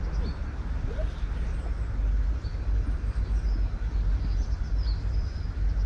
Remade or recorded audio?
recorded